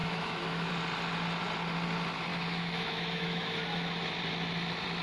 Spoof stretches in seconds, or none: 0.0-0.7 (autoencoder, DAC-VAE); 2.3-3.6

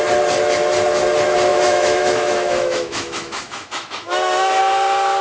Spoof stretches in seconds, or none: 1.5-4.6 (autoencoder, DAC-VAE)

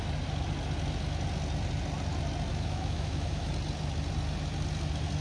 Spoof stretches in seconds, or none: 2.5-3.5 (autoencoder, DAC-VAE)